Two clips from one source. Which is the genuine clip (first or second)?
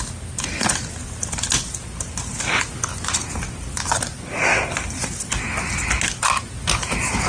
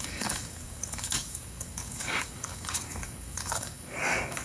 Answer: first